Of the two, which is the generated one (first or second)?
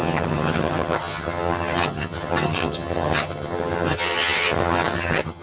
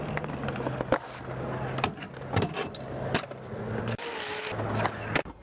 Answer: first